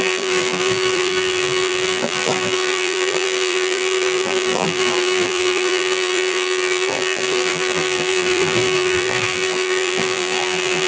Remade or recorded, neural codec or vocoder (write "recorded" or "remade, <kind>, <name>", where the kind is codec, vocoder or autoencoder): remade, vocoder, BigVGAN v2